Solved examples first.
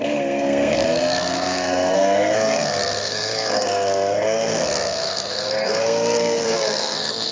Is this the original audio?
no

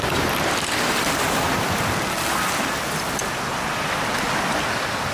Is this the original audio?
yes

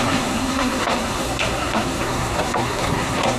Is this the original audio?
no